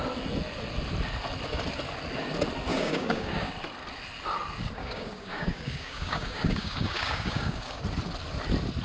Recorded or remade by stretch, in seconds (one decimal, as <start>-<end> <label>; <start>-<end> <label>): 0.0-2.7 recorded; 2.7-3.5 remade; 3.5-4.8 recorded; 4.8-7.8 remade; 7.8-8.8 recorded

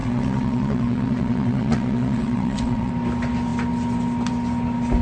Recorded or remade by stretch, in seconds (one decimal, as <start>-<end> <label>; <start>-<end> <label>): 0.0-2.9 remade; 2.9-5.0 recorded